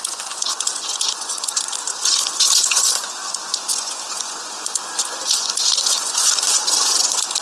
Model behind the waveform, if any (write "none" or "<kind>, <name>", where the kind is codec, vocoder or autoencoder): vocoder, Vocos